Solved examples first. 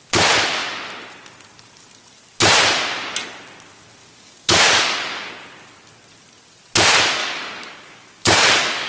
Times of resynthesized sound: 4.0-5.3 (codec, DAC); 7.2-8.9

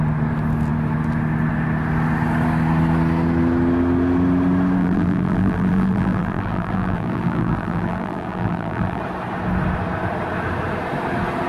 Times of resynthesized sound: 4.8-9.0 (vocoder, BigVGAN v2)

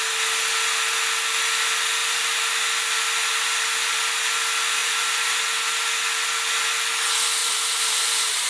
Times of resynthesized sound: 2.0-2.5 (vocoder, BigVGAN v2); 4.8-5.4; 7.4-8.5